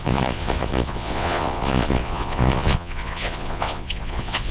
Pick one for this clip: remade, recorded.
remade